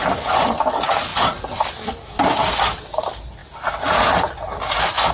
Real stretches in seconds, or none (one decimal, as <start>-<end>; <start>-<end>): 0.0-5.1